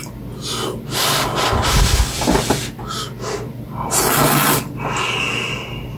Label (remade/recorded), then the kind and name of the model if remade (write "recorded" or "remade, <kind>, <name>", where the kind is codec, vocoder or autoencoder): recorded